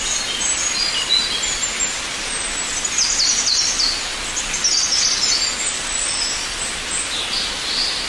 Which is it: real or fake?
real